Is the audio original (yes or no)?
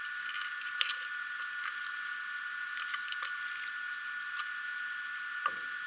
yes